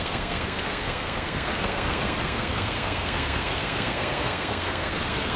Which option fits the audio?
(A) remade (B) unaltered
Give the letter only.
A